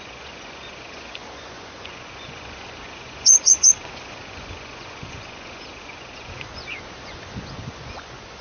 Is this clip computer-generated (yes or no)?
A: yes